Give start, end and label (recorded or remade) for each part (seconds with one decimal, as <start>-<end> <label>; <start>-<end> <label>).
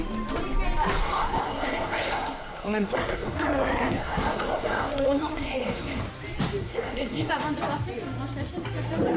0.0-1.0 recorded; 1.0-6.0 remade; 6.0-6.6 recorded; 6.6-7.3 remade; 7.3-9.2 recorded